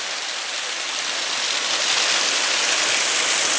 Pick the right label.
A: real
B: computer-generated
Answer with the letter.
A